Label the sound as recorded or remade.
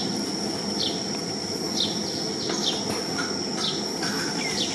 recorded